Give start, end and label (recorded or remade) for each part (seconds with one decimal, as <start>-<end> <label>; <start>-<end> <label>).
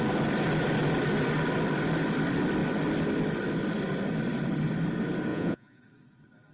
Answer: 0.0-5.3 recorded; 5.3-5.8 remade; 5.8-6.5 recorded